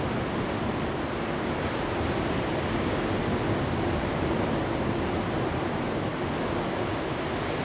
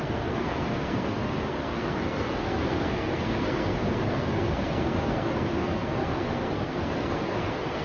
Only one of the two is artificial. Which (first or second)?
second